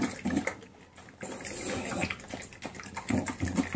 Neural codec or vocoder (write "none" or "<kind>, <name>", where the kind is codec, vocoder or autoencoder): none